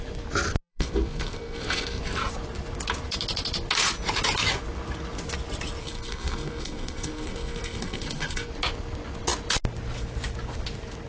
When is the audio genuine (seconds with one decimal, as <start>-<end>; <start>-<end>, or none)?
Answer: 0.0-0.7; 2.0-5.8; 8.5-11.1